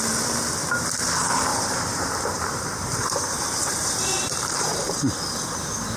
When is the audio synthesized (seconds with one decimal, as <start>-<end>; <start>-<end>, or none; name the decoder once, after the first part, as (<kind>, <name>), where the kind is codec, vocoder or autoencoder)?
1.5-5.1 (vocoder, BigVGAN v2)